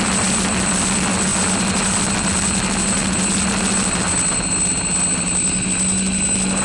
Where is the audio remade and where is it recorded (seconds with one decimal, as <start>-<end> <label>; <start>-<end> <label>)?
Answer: 0.0-6.6 recorded